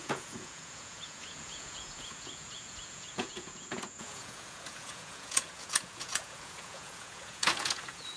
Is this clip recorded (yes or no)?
no